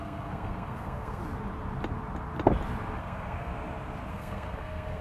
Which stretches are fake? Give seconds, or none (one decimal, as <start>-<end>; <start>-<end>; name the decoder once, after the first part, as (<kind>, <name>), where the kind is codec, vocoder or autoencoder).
0.0-1.2 (codec, SNAC); 3.0-3.5; 4.1-5.0